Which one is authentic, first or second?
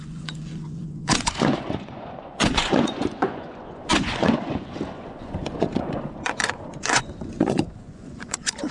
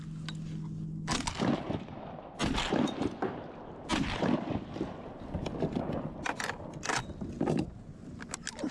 second